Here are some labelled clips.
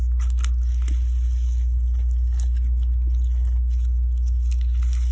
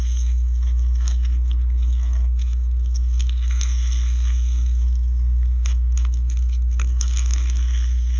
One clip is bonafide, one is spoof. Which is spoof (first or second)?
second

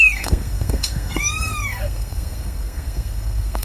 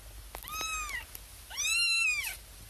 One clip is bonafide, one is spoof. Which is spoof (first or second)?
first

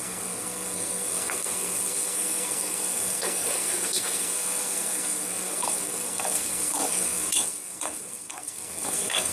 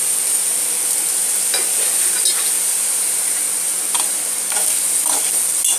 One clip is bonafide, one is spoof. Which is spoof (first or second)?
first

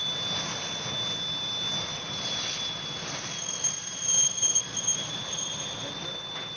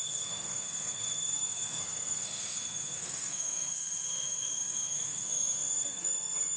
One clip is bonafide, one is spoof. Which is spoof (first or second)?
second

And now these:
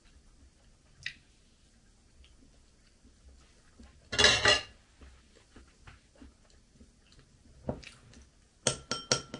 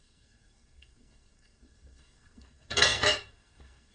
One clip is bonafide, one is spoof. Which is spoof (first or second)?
second